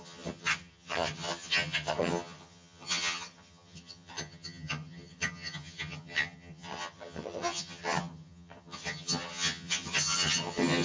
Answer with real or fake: fake